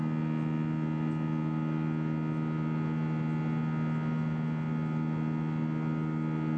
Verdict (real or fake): real